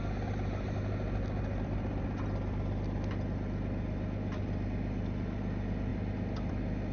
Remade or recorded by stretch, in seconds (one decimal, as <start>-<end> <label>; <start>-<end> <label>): 0.0-6.9 recorded